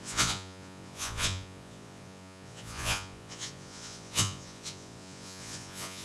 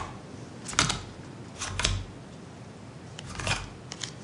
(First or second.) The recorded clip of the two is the second